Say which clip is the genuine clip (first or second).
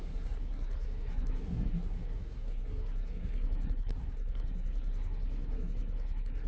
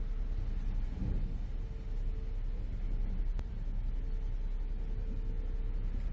second